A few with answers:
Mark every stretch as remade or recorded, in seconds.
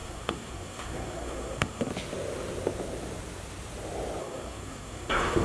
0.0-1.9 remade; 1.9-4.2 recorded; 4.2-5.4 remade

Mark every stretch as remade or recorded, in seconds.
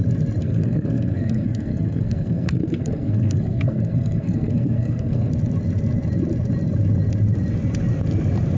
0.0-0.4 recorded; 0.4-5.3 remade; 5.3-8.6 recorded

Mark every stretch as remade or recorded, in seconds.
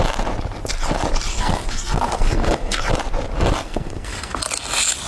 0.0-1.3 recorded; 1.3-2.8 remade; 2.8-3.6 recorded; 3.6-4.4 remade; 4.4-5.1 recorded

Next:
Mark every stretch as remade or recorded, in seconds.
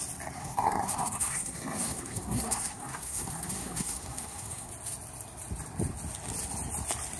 0.0-0.4 recorded; 0.4-4.7 remade; 4.7-7.2 recorded